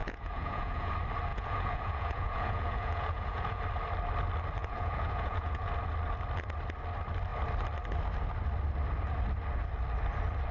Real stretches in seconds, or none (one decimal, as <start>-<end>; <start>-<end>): 0.9-1.3; 3.6-4.6; 5.7-10.5

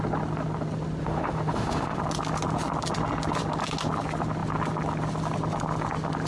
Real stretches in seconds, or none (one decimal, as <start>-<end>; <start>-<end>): 0.0-1.0; 2.0-6.3